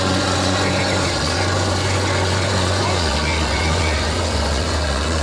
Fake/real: fake